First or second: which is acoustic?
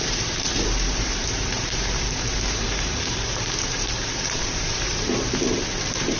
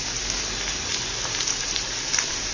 second